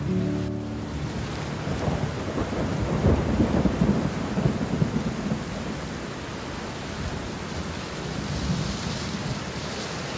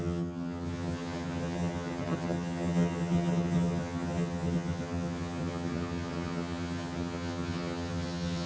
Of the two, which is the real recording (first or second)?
first